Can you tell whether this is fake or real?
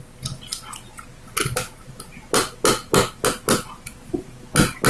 real